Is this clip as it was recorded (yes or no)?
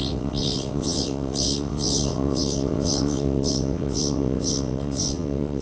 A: no